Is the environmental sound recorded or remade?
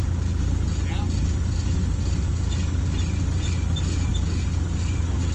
recorded